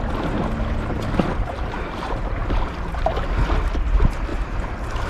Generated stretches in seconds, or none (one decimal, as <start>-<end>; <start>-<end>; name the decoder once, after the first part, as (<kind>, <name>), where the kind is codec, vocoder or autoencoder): 1.4-2.4 (vocoder, BigVGAN v2); 4.3-5.1